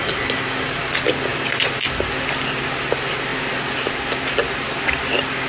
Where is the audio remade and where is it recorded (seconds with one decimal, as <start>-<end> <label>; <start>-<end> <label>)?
0.0-5.5 recorded